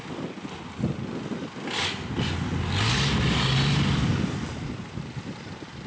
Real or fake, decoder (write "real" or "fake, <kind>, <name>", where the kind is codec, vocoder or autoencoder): real